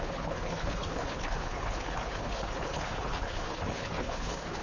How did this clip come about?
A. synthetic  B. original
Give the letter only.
A